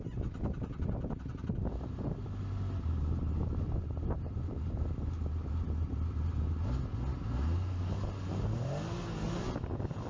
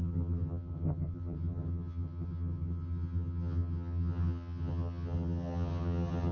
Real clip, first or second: first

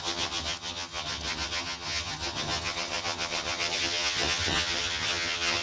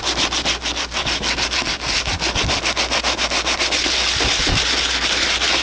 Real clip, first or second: second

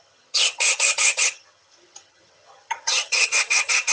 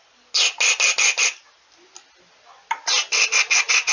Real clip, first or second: second